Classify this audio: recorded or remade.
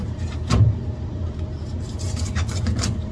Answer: remade